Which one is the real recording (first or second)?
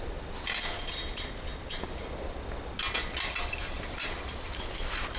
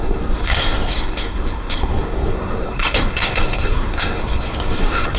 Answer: first